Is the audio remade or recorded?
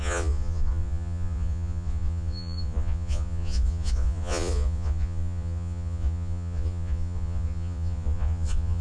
remade